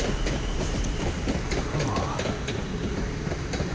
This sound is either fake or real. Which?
real